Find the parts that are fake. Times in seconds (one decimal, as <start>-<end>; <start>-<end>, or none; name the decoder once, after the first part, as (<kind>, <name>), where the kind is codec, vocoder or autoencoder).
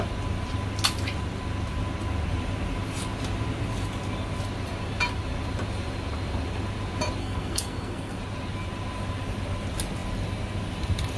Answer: 7.2-8.2 (codec, SNAC)